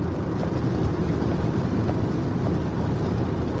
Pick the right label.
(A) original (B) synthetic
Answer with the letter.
A